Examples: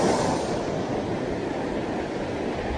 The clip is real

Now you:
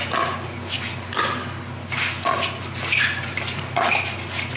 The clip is real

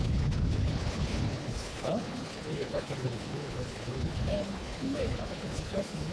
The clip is fake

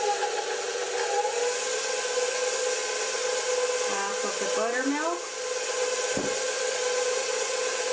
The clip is real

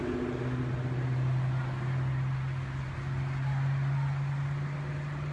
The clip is real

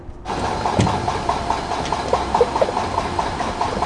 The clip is real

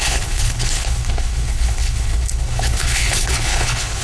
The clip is fake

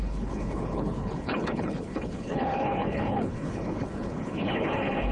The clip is fake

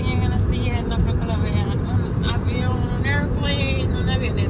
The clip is real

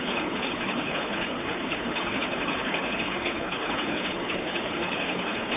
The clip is fake